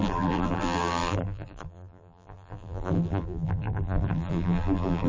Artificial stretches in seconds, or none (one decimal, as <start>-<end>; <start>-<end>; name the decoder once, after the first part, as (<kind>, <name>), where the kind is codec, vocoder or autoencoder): 0.0-5.1 (vocoder, BigVGAN v2)